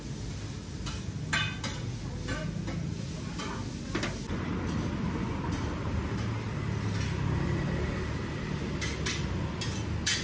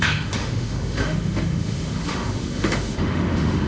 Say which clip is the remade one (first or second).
second